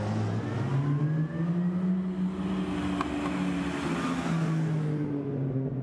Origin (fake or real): real